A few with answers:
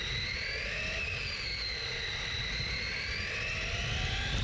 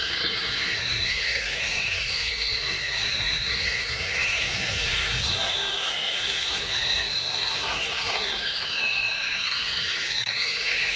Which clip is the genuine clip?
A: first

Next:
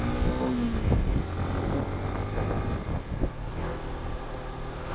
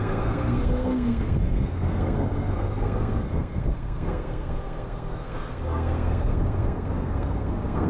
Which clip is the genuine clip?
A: first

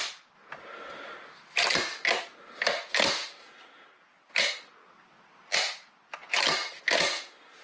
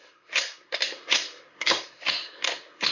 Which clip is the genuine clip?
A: first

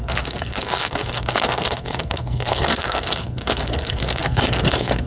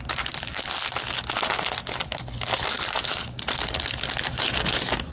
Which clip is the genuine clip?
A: second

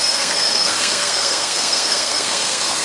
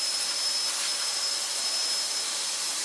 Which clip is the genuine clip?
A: second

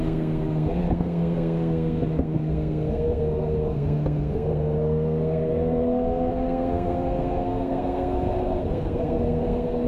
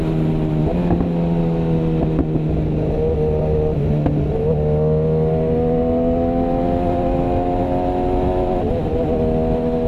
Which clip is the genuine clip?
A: second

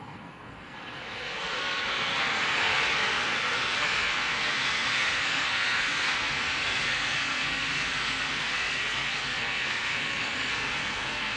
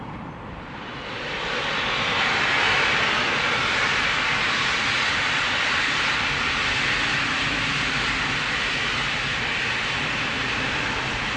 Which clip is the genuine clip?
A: second